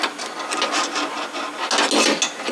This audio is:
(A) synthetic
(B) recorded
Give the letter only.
B